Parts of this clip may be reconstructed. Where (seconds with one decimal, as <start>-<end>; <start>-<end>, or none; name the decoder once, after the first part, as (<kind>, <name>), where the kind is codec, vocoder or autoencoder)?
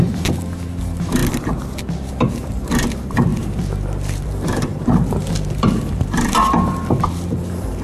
0.0-1.2 (vocoder, BigVGAN v2); 2.0-7.8